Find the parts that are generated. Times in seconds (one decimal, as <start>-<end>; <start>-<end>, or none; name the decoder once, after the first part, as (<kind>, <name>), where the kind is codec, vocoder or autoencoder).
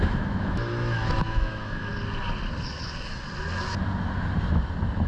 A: 0.0-1.9 (autoencoder, DAC-VAE)